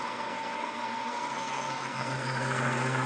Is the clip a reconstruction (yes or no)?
yes